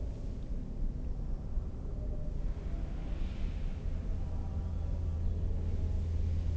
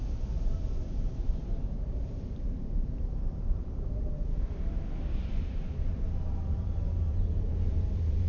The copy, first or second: second